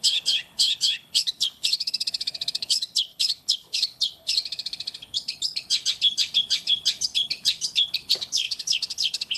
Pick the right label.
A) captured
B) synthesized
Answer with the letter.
B